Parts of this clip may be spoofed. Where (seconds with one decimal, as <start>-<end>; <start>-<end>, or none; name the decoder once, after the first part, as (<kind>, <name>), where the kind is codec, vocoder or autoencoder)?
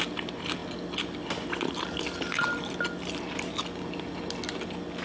none